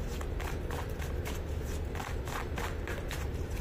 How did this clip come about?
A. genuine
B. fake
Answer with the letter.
A